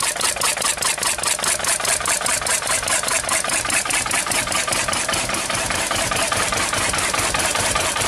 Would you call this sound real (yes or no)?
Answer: no